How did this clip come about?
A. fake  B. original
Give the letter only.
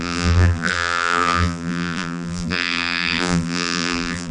A